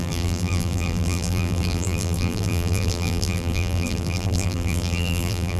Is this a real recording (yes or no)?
no